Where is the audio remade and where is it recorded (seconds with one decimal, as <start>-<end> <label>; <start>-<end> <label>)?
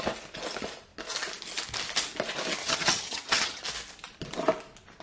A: 0.0-2.6 recorded; 2.6-3.6 remade; 3.6-5.0 recorded